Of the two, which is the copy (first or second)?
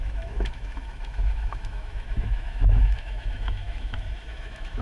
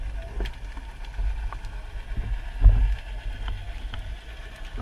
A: first